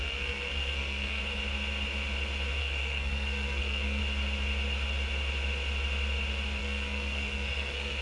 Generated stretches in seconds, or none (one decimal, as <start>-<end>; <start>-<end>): 0.0-1.2; 2.6-4.0; 6.6-8.0